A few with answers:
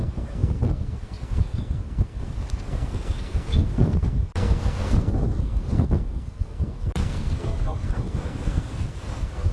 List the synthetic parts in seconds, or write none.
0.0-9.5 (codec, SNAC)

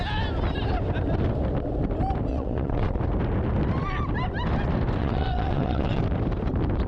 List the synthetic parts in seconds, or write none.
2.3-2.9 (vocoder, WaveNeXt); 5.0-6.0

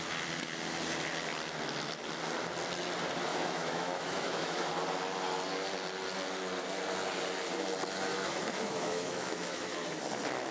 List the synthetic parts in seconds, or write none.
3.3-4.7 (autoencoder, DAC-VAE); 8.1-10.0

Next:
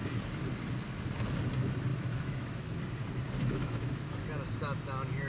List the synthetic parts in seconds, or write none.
1.9-2.8 (autoencoder, DAC-VAE); 3.6-4.2

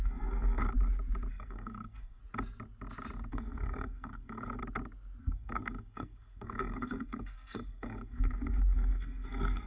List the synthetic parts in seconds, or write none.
0.0-0.6 (codec, SNAC); 1.3-2.2; 3.3-4.6; 5.2-9.7

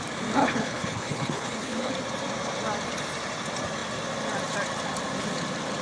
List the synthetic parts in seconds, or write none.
0.4-1.9 (codec, HILCodec)